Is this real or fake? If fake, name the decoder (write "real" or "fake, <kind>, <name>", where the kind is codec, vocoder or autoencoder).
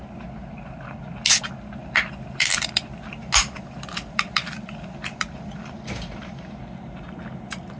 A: real